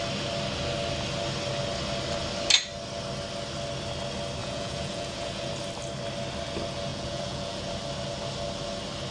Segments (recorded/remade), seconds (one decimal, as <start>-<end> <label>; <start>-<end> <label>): 0.0-4.4 recorded; 4.4-5.5 remade; 5.5-6.9 recorded; 6.9-7.7 remade; 7.7-9.1 recorded